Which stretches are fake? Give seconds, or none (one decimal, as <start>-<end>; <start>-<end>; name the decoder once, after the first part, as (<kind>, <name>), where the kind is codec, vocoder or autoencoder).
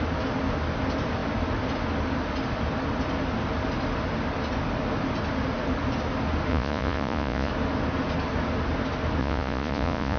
6.5-7.5 (vocoder, Vocos); 9.2-10.2